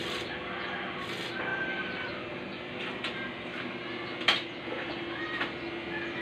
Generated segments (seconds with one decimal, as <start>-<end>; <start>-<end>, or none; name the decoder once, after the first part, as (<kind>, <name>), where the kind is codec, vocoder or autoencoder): 0.6-6.2 (vocoder, BigVGAN v2)